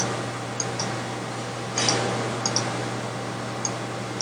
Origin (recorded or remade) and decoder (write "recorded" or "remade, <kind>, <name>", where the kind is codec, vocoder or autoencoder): recorded